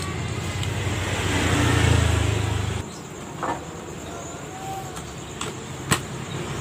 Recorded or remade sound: recorded